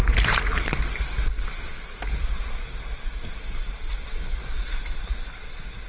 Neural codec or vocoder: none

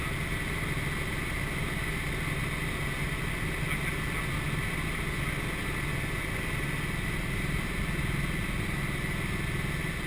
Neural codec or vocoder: none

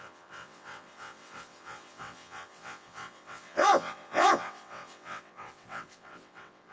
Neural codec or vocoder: vocoder, WaveNeXt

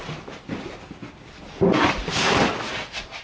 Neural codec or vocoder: none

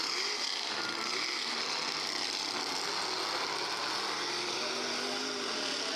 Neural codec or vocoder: none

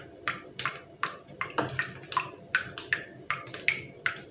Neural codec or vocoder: none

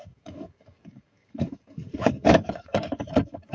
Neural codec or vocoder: codec, DAC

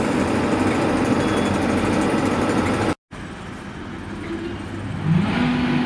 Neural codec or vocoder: none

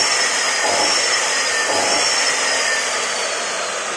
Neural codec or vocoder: vocoder, BigVGAN v2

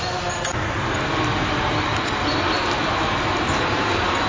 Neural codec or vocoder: none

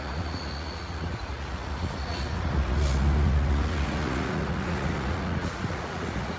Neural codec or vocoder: vocoder, Vocos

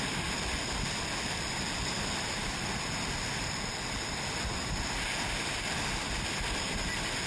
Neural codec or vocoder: none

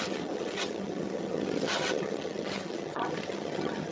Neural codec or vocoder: vocoder, HiFi-GAN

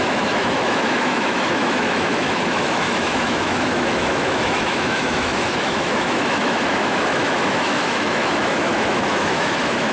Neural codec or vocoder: autoencoder, DAC-VAE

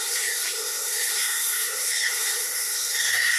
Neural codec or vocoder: codec, SNAC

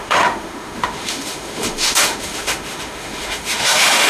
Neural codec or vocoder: autoencoder, DAC-VAE